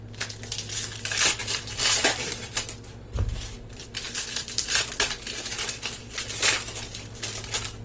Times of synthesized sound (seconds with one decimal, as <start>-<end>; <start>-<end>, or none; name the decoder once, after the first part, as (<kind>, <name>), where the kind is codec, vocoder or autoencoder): 1.4-6.1 (vocoder, BigVGAN v2)